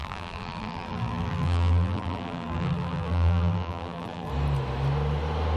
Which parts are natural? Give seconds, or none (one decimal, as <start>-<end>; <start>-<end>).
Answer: 4.3-5.6